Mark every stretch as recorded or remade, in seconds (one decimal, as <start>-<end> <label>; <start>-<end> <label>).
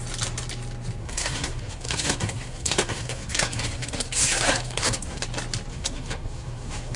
0.0-1.0 recorded; 1.0-5.2 remade; 5.2-5.7 recorded; 5.7-7.0 remade